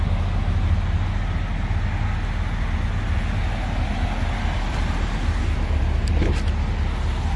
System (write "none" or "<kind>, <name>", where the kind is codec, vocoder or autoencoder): none